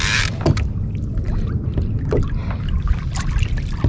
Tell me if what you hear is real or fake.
real